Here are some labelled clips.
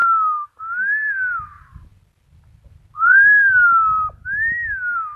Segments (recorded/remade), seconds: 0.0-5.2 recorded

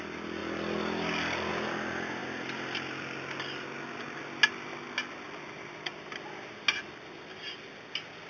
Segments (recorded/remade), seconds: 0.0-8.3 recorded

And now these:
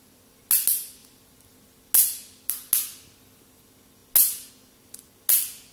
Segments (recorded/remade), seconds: 0.0-5.7 recorded

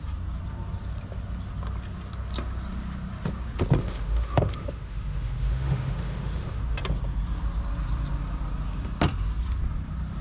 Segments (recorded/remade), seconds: 0.0-3.8 recorded; 3.8-6.6 remade; 6.6-10.2 recorded

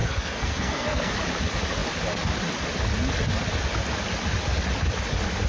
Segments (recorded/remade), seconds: 0.0-1.1 remade; 1.1-5.5 recorded

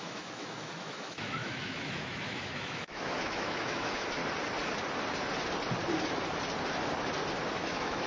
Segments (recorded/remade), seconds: 0.0-4.2 remade; 4.2-7.5 recorded; 7.5-8.1 remade

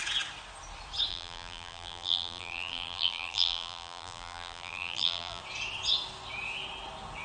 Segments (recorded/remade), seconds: 0.0-1.1 recorded; 1.1-5.4 remade; 5.4-7.2 recorded

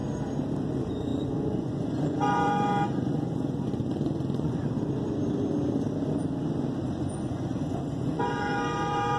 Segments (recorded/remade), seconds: 0.0-0.7 recorded; 0.7-4.6 remade; 4.6-6.9 recorded; 6.9-9.2 remade